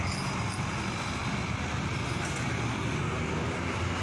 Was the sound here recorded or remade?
recorded